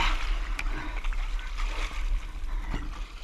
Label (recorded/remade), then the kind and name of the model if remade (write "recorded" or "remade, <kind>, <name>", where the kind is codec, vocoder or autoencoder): recorded